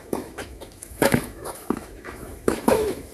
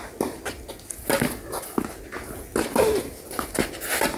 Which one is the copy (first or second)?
first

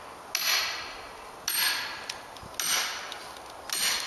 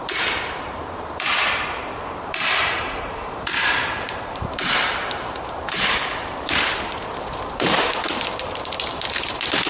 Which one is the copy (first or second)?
second